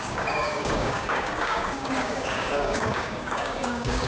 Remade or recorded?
remade